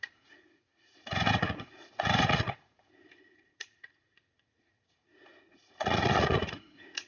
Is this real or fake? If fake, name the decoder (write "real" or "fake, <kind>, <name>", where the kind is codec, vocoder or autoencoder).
fake, vocoder, Vocos